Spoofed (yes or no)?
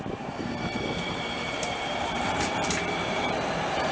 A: yes